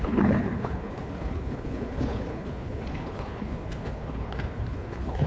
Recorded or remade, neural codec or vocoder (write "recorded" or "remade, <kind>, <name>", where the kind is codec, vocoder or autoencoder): remade, codec, HILCodec